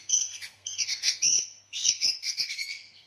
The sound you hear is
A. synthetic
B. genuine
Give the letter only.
A